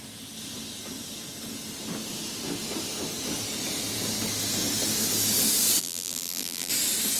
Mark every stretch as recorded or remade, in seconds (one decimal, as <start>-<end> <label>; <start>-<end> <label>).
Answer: 0.0-5.8 recorded; 5.8-6.7 remade; 6.7-7.2 recorded